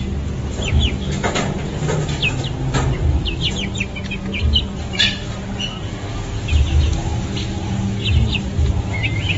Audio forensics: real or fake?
real